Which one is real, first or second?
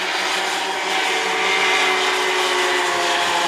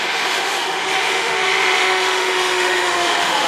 first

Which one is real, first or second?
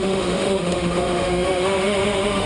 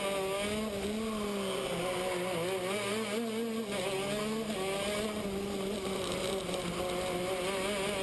second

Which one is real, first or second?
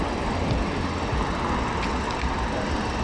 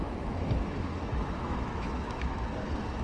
first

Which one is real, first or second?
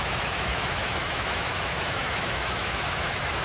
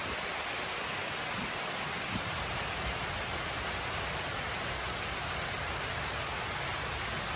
second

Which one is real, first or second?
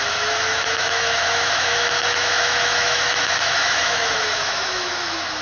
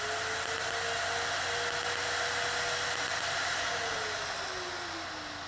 second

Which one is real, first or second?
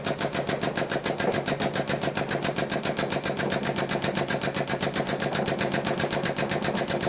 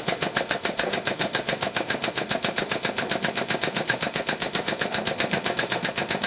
first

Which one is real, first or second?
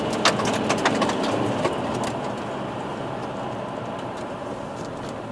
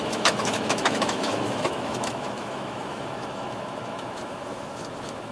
first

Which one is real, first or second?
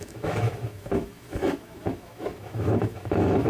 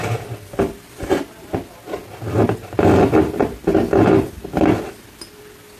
second